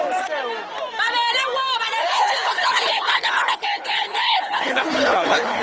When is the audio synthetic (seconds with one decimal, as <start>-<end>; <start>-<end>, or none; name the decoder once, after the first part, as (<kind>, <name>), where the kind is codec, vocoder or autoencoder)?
2.0-5.6 (codec, HILCodec)

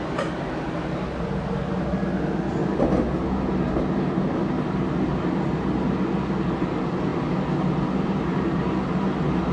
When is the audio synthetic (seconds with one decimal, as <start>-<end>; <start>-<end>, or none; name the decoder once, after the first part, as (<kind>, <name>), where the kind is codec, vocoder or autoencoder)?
none